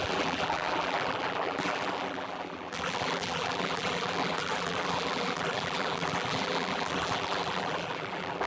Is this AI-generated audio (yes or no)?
yes